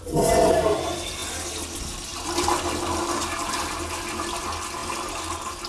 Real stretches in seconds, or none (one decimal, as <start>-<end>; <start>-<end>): 0.0-5.7